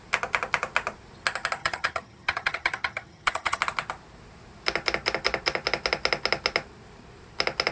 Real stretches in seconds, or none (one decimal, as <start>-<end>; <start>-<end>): 0.0-1.6; 3.6-7.7